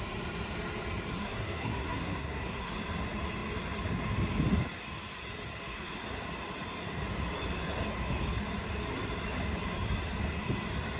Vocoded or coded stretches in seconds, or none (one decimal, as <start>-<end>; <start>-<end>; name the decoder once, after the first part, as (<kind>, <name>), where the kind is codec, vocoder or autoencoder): 1.2-2.7 (codec, SNAC)